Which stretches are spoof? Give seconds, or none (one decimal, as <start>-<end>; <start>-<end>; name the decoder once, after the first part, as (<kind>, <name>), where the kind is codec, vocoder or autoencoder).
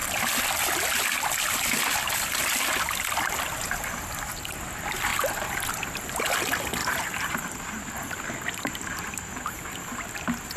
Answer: 6.8-7.9 (vocoder, BigVGAN v2)